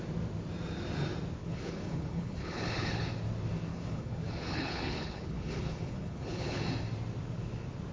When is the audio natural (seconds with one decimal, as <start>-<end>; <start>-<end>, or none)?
0.0-1.4; 3.1-3.7; 6.6-7.9